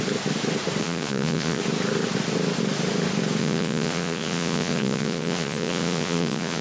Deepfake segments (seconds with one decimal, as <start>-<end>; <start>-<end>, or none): 0.8-1.6; 3.4-6.6